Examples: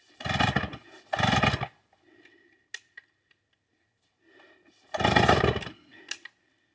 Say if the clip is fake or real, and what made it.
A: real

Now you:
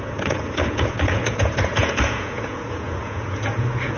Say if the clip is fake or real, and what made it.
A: fake, vocoder, Vocos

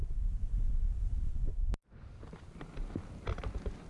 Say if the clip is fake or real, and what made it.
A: real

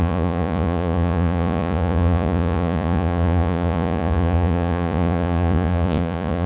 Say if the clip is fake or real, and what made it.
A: fake, vocoder, Vocos